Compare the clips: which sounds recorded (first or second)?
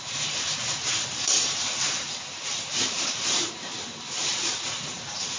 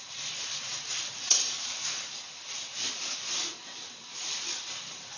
second